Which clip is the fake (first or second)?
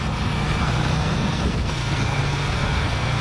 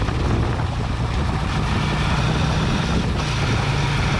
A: first